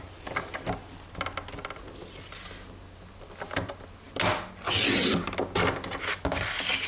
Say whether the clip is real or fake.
real